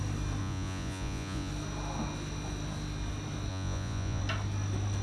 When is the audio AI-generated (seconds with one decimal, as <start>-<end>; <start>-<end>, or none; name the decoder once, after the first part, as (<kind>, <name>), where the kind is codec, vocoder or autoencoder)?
0.4-1.5 (vocoder, Vocos); 3.5-4.2

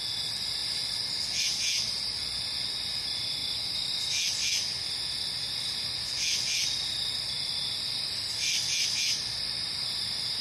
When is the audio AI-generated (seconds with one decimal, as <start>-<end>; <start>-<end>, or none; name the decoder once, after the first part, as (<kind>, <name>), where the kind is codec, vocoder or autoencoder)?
none

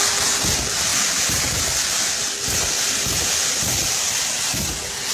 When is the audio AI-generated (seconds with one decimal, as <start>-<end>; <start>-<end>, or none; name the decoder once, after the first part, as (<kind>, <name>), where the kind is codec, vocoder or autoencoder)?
none

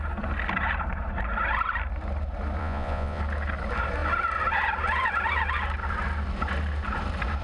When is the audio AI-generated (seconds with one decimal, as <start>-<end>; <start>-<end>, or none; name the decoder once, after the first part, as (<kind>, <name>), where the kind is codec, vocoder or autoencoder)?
2.6-3.2 (vocoder, Vocos)

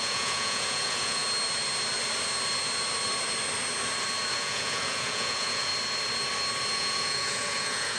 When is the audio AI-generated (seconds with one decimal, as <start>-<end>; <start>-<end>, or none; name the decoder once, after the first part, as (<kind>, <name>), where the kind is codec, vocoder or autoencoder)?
0.0-1.2 (vocoder, Vocos); 4.3-5.7; 6.7-8.0

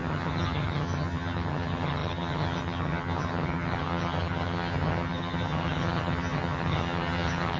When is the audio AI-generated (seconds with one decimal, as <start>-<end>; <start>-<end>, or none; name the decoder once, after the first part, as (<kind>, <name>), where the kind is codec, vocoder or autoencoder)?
0.0-7.6 (vocoder, HiFi-GAN)

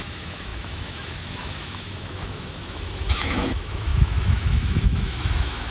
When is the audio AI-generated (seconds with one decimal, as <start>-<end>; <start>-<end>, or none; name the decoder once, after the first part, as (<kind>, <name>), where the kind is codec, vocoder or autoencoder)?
0.0-5.7 (autoencoder, DAC-VAE)

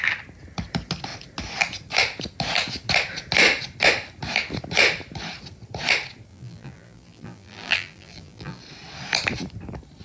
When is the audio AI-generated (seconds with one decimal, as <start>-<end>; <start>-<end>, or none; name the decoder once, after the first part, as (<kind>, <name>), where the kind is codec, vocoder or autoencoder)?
6.3-8.6 (vocoder, BigVGAN v2)